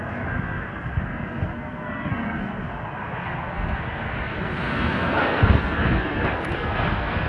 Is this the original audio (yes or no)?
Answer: no